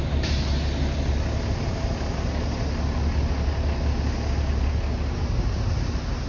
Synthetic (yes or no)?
no